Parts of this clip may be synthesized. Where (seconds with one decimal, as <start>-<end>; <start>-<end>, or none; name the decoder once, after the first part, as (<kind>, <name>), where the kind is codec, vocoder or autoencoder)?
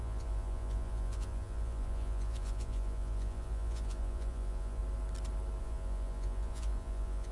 0.0-4.8 (vocoder, Vocos); 5.6-7.3